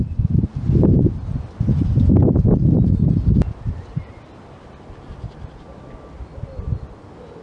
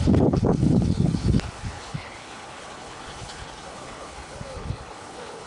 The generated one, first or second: second